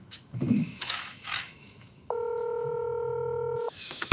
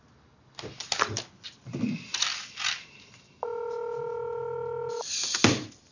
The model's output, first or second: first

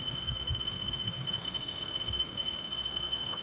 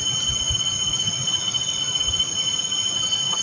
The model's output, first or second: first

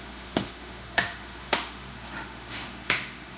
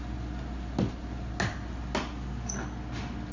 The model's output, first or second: first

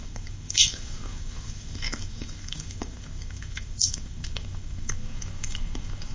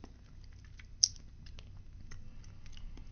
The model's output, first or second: first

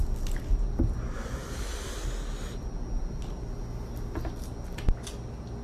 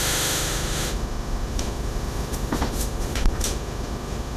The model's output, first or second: second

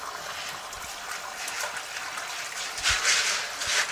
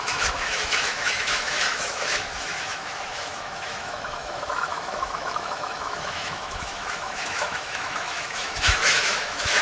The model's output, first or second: second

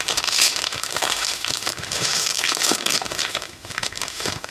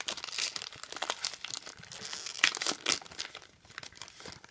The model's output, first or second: first